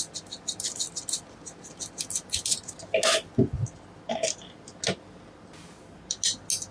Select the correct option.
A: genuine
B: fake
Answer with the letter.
A